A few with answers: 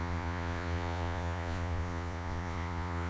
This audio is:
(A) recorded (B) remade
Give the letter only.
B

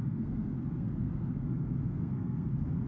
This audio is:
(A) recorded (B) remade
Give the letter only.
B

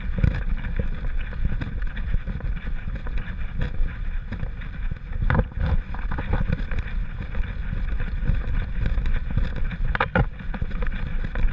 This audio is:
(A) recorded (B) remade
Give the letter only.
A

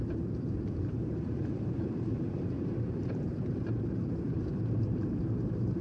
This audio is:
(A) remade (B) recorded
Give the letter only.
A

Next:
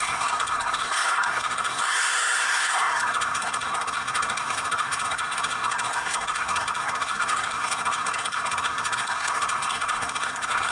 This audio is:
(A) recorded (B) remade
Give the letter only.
B